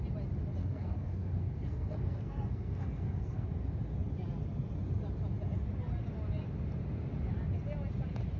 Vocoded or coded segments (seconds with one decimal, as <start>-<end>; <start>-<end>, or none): 0.6-3.5